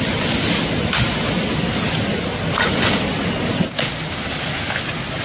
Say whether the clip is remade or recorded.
recorded